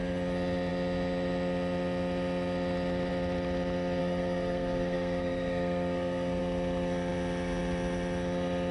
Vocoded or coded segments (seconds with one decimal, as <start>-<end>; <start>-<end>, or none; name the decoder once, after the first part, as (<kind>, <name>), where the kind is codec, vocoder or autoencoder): 4.0-6.4 (codec, SNAC)